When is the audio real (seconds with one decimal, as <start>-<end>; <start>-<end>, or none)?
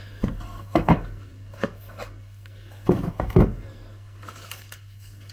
none